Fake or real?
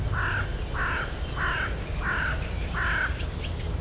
real